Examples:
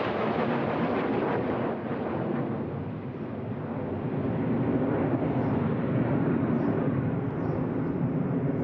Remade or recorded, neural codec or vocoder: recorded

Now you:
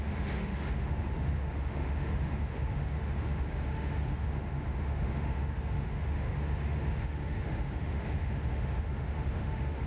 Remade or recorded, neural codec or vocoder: remade, autoencoder, DAC-VAE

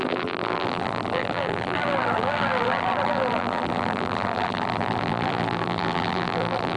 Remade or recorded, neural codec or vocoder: remade, vocoder, BigVGAN v2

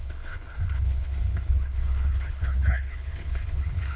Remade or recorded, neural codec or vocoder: remade, codec, HILCodec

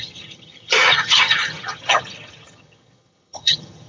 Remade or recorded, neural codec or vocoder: remade, vocoder, HiFi-GAN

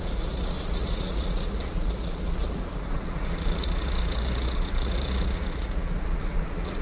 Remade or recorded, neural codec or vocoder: remade, vocoder, Vocos